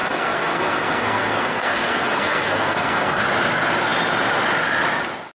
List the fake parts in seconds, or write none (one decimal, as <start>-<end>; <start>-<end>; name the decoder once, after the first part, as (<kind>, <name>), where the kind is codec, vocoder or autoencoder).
0.0-3.2 (codec, SNAC)